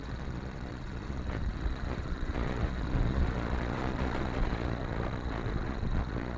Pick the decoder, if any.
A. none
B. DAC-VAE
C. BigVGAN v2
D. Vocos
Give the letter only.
D